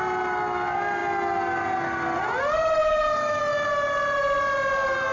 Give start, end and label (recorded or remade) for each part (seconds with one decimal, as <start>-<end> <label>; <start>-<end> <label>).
0.0-2.8 recorded; 2.8-3.4 remade; 3.4-5.1 recorded